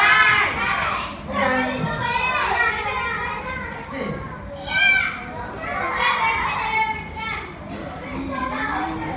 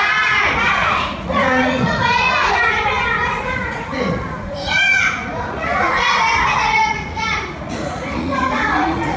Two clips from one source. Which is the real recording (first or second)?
first